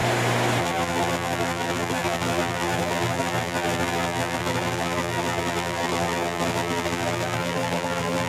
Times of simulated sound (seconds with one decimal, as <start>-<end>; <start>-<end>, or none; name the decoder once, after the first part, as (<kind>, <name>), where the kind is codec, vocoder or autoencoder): 0.6-8.3 (vocoder, BigVGAN v2)